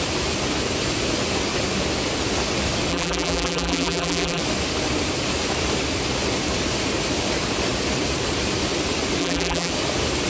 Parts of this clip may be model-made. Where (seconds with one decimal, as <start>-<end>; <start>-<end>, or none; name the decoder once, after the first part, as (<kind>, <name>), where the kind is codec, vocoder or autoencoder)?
2.9-4.4 (vocoder, BigVGAN v2); 9.2-9.7